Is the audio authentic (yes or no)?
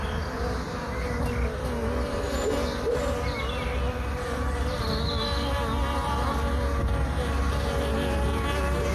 yes